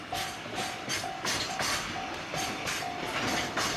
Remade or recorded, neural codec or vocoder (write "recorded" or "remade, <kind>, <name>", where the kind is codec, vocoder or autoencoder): recorded